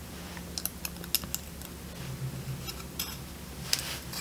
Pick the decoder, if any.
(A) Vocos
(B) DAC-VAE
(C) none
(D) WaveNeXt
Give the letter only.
C